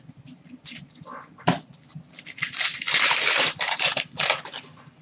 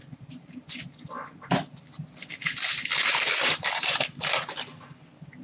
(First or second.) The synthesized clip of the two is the first